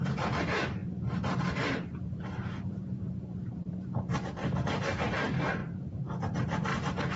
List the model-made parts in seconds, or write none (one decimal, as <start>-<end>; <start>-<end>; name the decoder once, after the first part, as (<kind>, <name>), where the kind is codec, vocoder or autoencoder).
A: 0.0-6.7 (vocoder, BigVGAN v2)